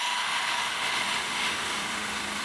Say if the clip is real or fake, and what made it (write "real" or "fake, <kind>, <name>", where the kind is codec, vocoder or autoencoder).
fake, autoencoder, DAC-VAE